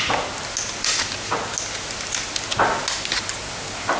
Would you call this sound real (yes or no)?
yes